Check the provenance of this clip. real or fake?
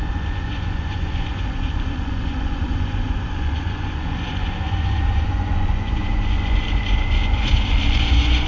fake